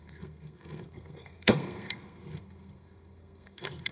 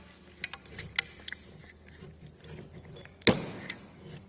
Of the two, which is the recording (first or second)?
second